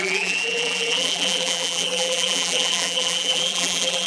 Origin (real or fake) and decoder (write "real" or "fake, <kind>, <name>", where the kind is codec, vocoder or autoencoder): fake, vocoder, BigVGAN v2